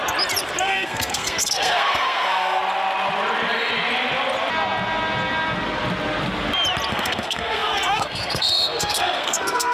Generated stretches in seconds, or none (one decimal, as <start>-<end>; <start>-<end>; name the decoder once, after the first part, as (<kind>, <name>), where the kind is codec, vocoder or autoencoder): 0.6-2.6 (codec, SNAC); 6.9-9.7